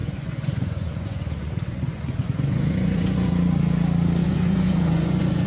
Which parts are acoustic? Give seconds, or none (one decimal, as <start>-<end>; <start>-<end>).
3.3-4.2